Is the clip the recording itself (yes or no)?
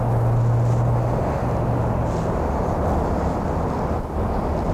yes